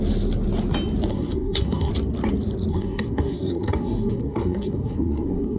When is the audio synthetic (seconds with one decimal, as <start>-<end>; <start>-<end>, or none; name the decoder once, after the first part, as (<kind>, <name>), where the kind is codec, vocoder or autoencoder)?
1.1-1.9 (codec, SNAC); 2.7-5.6